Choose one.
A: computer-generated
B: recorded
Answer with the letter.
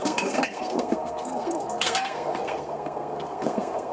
A